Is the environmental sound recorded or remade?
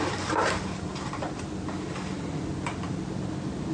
recorded